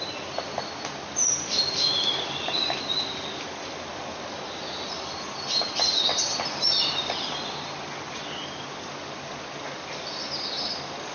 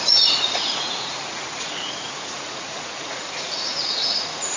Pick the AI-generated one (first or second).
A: second